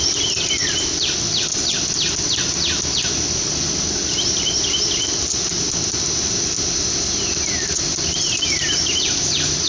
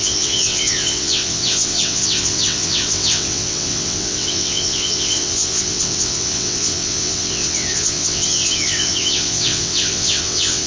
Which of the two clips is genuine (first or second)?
first